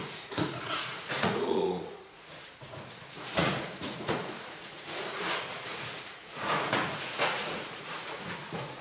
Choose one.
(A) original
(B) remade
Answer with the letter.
B